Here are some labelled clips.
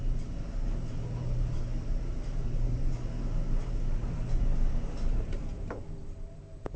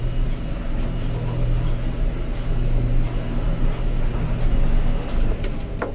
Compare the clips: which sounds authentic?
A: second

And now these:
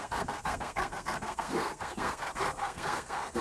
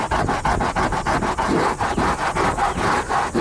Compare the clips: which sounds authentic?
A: second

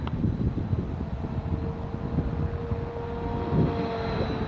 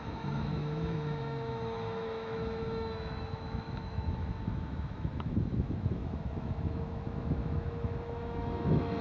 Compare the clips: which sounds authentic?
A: first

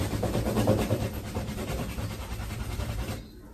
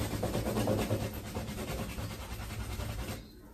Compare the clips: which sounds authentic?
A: second